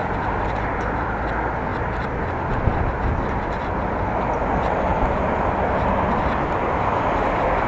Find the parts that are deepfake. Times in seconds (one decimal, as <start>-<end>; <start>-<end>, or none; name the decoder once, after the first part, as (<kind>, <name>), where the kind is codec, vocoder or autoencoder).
0.0-0.5 (vocoder, BigVGAN v2); 1.7-2.4; 4.9-5.9

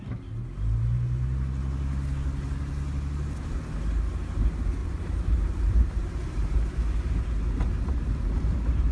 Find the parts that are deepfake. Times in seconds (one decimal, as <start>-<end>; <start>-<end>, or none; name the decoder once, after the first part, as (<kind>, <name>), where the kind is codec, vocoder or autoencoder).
4.8-7.2 (vocoder, BigVGAN v2)

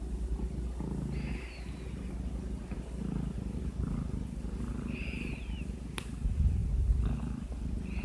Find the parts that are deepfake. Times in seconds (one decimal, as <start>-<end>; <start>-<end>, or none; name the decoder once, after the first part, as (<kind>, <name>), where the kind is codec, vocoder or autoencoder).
none

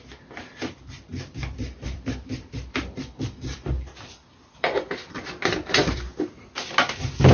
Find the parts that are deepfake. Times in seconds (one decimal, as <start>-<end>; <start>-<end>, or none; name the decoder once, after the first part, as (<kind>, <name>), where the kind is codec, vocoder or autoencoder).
1.1-5.2 (vocoder, BigVGAN v2)

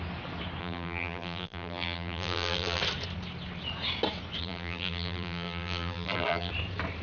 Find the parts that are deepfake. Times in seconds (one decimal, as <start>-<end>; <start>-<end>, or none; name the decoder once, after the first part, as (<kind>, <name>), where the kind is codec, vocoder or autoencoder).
0.6-2.8 (vocoder, BigVGAN v2); 4.4-6.5

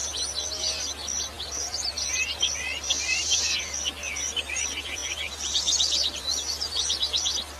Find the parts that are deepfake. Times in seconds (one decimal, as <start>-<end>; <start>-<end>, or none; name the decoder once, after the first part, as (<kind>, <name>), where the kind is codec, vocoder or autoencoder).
3.4-5.0 (vocoder, BigVGAN v2); 6.7-7.6